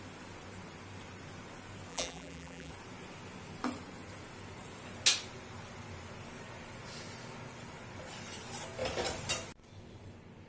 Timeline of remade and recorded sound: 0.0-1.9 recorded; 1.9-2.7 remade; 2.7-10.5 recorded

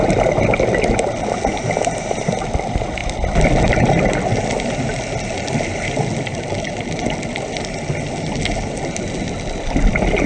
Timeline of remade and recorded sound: 0.0-10.3 recorded

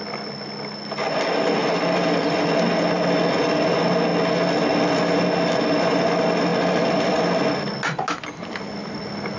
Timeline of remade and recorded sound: 0.0-1.6 recorded; 1.6-2.5 remade; 2.5-6.5 recorded; 6.5-7.2 remade; 7.2-9.4 recorded